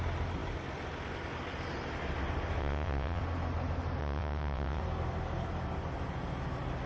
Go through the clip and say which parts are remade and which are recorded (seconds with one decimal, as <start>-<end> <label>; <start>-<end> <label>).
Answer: 0.0-2.6 recorded; 2.6-3.2 remade; 3.2-4.0 recorded; 4.0-4.8 remade; 4.8-6.9 recorded